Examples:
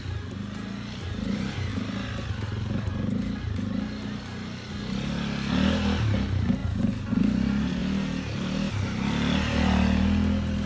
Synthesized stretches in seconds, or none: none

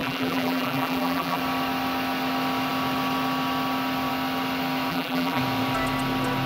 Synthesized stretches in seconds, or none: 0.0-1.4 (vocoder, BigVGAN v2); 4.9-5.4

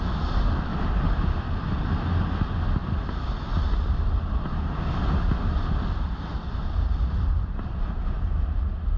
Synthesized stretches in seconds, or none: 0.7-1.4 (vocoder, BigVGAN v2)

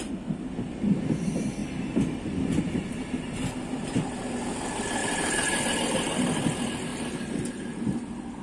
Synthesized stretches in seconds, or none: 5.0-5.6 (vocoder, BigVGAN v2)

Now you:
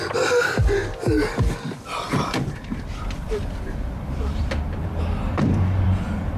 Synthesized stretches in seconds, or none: 0.0-0.8 (vocoder, BigVGAN v2); 1.8-3.4; 4.0-6.4